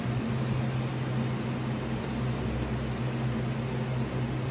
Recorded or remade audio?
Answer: recorded